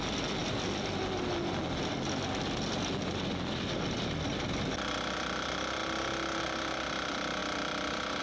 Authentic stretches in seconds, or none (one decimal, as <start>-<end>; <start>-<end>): 0.0-8.2